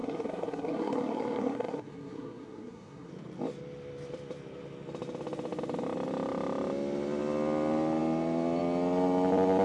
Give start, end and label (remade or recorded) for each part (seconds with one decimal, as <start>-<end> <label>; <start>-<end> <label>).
0.0-3.1 remade; 3.1-9.6 recorded